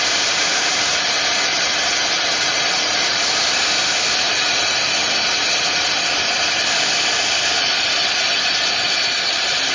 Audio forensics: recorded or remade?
recorded